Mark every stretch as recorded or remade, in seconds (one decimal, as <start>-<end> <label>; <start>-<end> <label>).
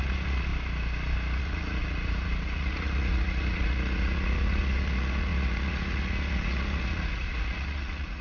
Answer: 0.0-0.5 remade; 0.5-1.4 recorded; 1.4-8.2 remade